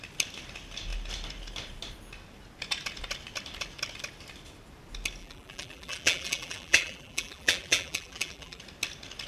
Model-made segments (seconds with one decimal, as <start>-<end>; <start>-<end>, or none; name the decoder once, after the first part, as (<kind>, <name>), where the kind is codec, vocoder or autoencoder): 5.2-8.6 (vocoder, BigVGAN v2)